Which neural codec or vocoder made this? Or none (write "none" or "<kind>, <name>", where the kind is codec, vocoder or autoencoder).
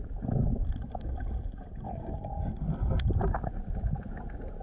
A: none